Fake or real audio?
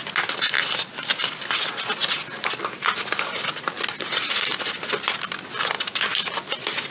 real